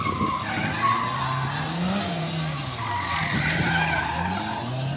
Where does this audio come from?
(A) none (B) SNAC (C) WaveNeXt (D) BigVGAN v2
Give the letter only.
A